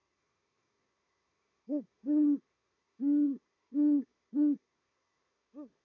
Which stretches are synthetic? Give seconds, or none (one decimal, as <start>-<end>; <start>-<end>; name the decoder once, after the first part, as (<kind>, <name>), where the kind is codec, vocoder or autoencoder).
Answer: 0.0-5.8 (codec, SNAC)